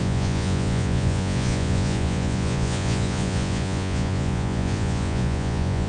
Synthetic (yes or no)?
yes